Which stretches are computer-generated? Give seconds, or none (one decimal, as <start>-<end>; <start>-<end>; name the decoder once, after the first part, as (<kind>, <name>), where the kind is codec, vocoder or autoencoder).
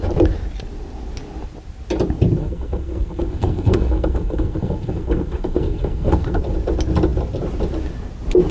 2.4-6.4 (codec, SNAC)